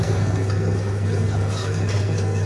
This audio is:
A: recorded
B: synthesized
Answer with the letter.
B